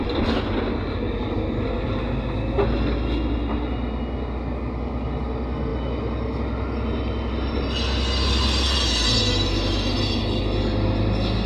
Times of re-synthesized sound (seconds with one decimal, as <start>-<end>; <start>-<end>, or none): none